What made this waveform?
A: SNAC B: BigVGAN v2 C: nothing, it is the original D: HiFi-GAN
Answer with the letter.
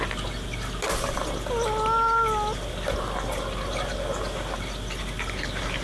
C